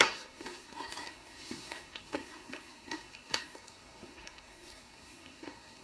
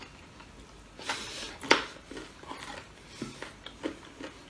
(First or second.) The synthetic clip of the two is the first